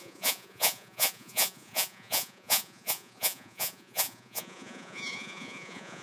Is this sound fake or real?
fake